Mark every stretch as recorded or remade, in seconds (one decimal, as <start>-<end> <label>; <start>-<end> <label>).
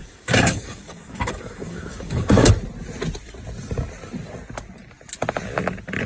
0.0-2.5 remade; 2.5-6.1 recorded